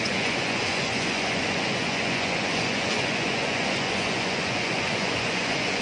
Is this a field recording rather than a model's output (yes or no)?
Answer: no